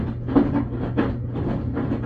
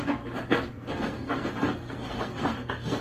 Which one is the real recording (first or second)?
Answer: first